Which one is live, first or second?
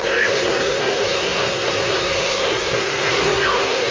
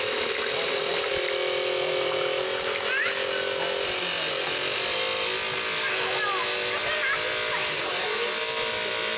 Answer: second